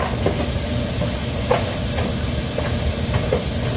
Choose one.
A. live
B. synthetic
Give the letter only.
A